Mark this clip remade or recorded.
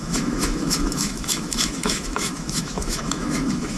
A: remade